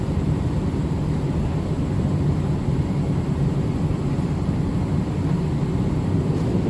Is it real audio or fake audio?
fake